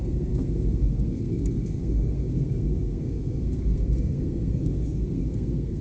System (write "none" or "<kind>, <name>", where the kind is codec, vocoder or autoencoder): codec, SNAC